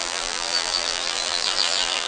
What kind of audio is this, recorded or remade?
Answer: remade